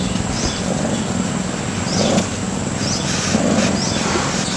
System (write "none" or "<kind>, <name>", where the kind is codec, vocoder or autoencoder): none